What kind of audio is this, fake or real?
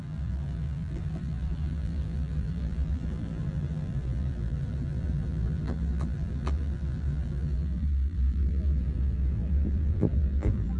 fake